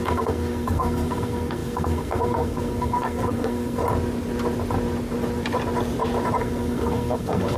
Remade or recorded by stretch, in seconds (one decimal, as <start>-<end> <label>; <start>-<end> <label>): 0.0-3.8 remade; 3.8-6.4 recorded; 6.4-7.6 remade